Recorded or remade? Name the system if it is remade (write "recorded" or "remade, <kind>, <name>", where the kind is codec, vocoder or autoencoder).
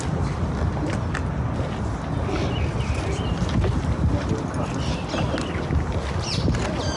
recorded